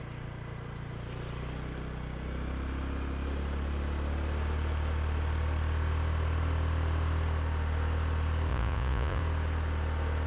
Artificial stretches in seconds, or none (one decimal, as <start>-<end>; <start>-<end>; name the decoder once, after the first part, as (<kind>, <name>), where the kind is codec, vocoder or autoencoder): 8.5-9.2 (vocoder, Vocos)